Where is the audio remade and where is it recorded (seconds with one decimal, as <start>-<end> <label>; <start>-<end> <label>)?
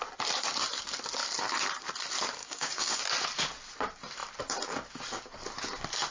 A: 0.0-2.4 recorded; 2.4-3.0 remade; 3.0-6.1 recorded